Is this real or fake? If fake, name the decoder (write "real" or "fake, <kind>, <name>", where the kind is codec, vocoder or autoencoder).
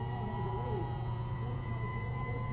fake, vocoder, Vocos